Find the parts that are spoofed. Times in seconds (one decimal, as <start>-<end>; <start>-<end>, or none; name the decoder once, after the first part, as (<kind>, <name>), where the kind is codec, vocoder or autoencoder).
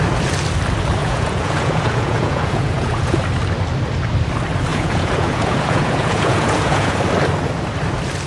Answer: 1.0-3.2 (vocoder, Vocos); 4.7-7.0